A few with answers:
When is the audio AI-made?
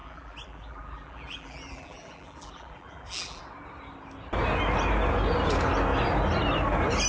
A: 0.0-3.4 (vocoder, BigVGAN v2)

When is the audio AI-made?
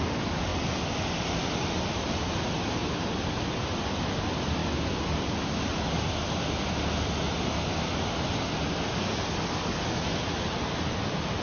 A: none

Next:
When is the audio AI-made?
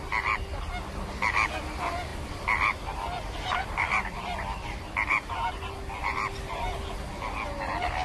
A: 2.1-5.5 (vocoder, BigVGAN v2)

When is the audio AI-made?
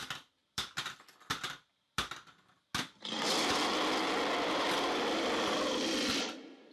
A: 0.4-2.5 (vocoder, BigVGAN v2)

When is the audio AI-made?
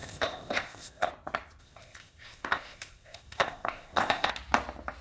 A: 0.0-1.1 (codec, ZipCodec); 1.6-4.3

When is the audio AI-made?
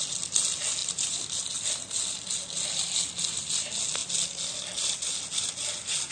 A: none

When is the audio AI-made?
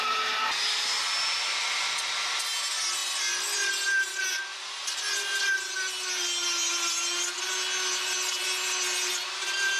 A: none